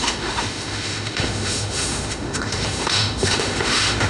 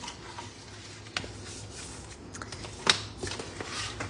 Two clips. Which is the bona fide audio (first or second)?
second